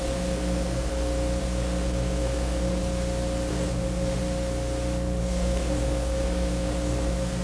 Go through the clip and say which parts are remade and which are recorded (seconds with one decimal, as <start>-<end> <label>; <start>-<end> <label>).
0.0-0.9 remade; 0.9-1.4 recorded; 1.4-2.8 remade; 2.8-3.5 recorded; 3.5-4.2 remade; 4.2-5.2 recorded; 5.2-7.4 remade